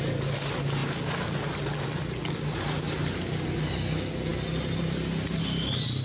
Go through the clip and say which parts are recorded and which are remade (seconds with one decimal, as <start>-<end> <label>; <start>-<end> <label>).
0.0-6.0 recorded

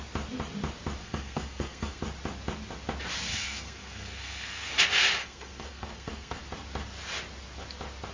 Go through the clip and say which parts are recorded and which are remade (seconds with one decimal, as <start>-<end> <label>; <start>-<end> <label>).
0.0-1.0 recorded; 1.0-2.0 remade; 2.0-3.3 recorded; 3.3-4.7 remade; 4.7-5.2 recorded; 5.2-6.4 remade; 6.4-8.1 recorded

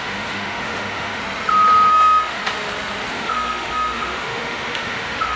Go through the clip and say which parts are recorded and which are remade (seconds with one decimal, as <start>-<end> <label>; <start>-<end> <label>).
0.0-1.2 remade; 1.2-1.9 recorded; 1.9-2.4 remade; 2.4-3.1 recorded; 3.1-5.4 remade

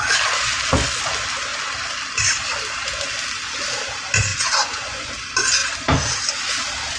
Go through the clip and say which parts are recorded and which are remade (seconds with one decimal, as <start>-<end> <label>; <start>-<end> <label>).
0.0-4.3 recorded; 4.3-5.1 remade; 5.1-7.0 recorded

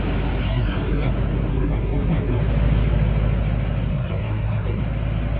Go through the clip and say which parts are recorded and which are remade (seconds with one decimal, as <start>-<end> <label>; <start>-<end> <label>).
0.0-0.4 recorded; 0.4-1.1 remade; 1.1-1.5 recorded; 1.5-2.4 remade; 2.4-3.9 recorded; 3.9-4.8 remade; 4.8-5.4 recorded